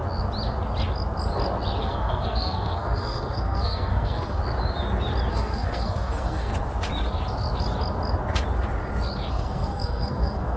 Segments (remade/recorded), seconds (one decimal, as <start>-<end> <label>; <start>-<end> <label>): 0.0-1.8 recorded; 1.8-4.4 remade; 4.4-5.3 recorded; 5.3-6.5 remade; 6.5-9.3 recorded; 9.3-10.6 remade